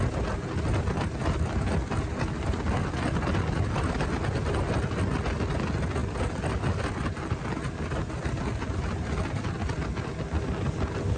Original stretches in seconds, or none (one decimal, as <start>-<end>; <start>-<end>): 0.0-11.2